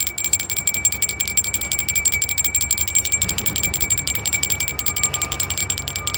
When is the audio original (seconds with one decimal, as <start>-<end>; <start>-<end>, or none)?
0.0-6.2